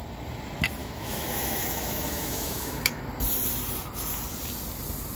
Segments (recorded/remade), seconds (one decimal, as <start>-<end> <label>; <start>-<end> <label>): 0.0-0.8 recorded; 0.8-3.0 remade; 3.0-5.1 recorded